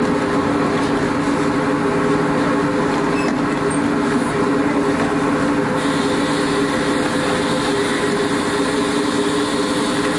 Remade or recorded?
recorded